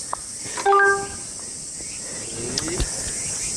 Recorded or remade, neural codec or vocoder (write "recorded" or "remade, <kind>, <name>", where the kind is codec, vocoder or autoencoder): recorded